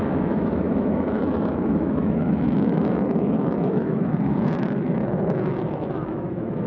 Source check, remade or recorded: remade